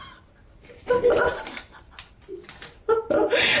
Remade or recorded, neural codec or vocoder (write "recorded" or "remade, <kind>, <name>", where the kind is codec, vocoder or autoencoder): recorded